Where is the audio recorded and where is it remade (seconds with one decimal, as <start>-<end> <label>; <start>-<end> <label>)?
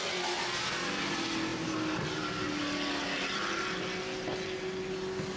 0.0-5.4 recorded